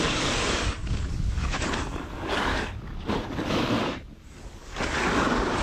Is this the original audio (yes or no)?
no